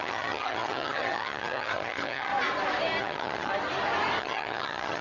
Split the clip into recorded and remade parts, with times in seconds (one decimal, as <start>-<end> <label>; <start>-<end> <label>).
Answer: 0.0-2.3 remade; 2.3-3.0 recorded; 3.0-3.5 remade; 3.5-4.2 recorded; 4.2-5.0 remade